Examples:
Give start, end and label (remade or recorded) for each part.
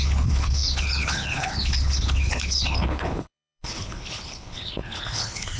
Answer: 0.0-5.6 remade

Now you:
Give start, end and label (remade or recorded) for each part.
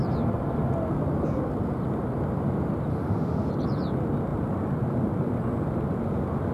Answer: 0.0-2.9 recorded; 2.9-3.5 remade; 3.5-6.5 recorded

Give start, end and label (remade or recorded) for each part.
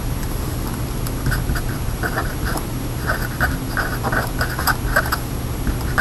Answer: 0.0-6.0 recorded